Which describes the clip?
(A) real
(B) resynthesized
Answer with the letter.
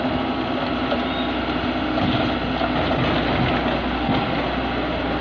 A